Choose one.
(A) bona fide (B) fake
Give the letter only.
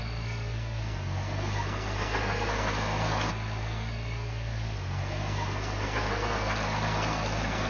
B